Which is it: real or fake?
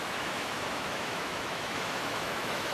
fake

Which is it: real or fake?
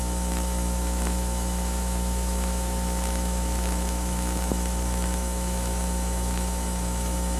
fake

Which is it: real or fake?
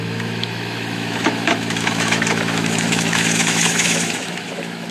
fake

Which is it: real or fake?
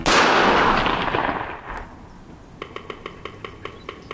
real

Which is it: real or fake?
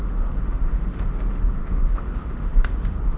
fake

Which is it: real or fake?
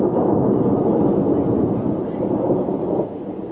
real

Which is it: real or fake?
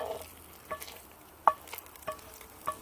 real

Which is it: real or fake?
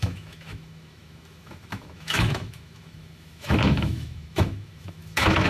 fake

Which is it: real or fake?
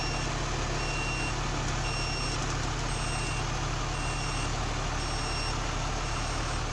real